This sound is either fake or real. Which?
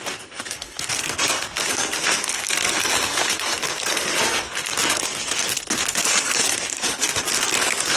fake